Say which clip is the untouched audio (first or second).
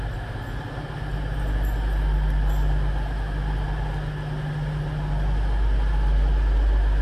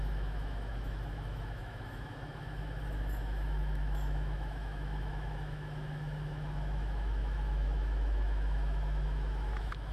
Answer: first